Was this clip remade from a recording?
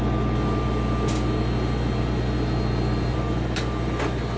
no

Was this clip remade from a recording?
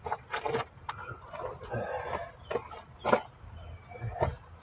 no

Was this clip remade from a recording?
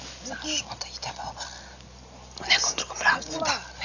no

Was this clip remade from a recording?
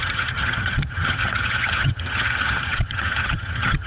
yes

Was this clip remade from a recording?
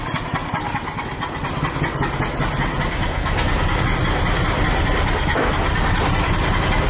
no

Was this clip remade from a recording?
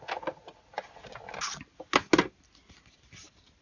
no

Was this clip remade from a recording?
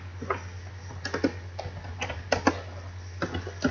no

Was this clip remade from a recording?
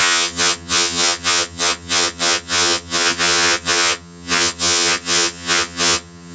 yes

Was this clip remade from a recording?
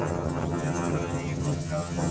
yes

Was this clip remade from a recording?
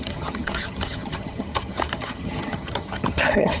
yes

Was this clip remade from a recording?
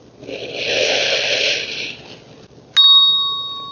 no